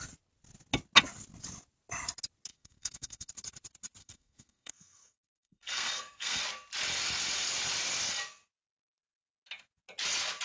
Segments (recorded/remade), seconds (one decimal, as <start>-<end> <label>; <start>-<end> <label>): 0.0-2.5 recorded; 2.5-3.3 remade; 3.3-4.0 recorded; 4.0-6.4 remade; 6.4-10.4 recorded